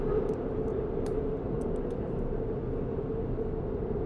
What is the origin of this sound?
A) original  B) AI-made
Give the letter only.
A